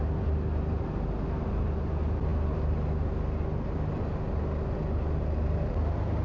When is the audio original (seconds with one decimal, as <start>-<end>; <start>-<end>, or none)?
0.0-6.2